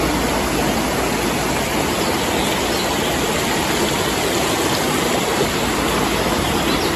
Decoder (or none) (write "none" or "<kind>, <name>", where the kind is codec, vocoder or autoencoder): none